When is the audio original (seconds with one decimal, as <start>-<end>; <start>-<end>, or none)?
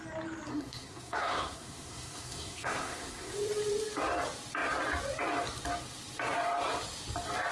0.0-0.5; 3.3-7.5